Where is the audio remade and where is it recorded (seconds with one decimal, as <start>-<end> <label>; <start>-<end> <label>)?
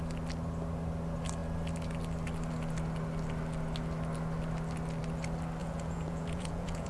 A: 0.0-5.6 recorded; 5.6-6.9 remade